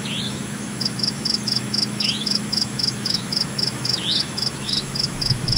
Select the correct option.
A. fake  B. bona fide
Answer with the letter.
A